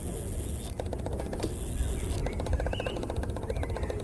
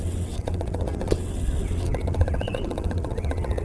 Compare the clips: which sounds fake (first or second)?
second